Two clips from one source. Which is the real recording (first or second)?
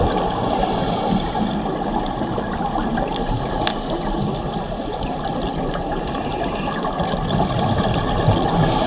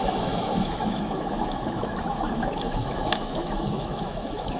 first